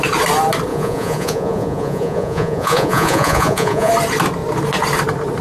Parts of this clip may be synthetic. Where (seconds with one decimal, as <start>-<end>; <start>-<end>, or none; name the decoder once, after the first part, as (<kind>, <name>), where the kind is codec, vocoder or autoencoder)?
0.7-3.9 (vocoder, Vocos)

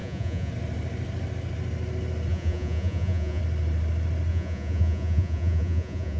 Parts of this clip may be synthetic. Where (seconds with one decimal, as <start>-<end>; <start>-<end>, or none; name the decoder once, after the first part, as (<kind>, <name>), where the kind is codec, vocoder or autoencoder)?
0.0-0.5 (vocoder, Vocos); 2.3-3.4; 4.3-6.2

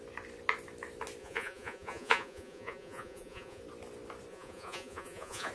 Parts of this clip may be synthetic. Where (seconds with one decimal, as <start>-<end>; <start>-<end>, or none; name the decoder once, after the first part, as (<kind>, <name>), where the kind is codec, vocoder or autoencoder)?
1.2-3.6 (vocoder, Vocos); 4.3-5.5

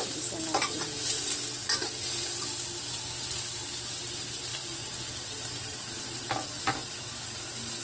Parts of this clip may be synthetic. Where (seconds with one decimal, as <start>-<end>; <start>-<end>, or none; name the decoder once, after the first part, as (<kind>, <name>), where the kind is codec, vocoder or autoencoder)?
4.5-5.1 (vocoder, Vocos)

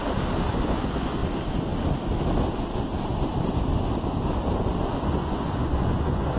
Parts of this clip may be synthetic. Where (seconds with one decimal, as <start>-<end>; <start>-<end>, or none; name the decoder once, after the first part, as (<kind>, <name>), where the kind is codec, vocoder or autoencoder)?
0.5-1.2 (vocoder, Vocos); 5.0-6.4

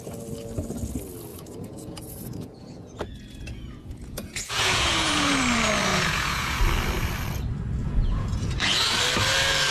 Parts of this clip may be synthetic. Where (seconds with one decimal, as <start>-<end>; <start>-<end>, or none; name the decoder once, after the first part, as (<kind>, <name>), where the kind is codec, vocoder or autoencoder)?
1.3-5.4 (vocoder, Vocos); 5.9-6.6; 7.8-9.0

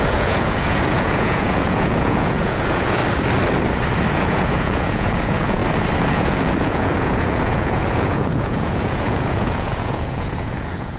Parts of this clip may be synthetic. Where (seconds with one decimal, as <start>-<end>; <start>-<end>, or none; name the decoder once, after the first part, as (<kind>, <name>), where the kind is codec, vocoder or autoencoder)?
0.0-3.0 (vocoder, Vocos); 4.1-5.6; 6.1-11.0